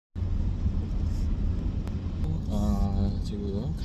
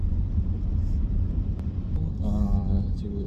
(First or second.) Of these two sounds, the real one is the first